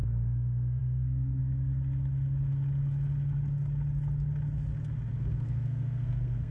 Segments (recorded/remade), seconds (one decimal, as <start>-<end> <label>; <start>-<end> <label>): 0.0-1.4 remade; 1.4-5.3 recorded; 5.3-6.5 remade